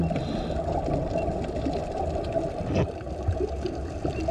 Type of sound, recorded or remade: recorded